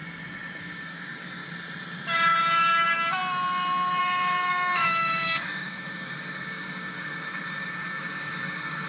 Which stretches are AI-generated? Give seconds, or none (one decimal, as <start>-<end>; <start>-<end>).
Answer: 0.6-1.4; 2.4-3.2; 4.0-8.9